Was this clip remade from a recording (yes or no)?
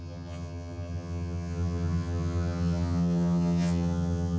yes